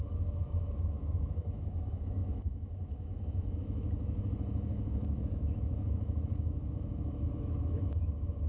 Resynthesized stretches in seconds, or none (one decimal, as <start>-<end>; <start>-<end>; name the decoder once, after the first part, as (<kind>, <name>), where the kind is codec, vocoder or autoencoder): 0.0-8.5 (autoencoder, DAC-VAE)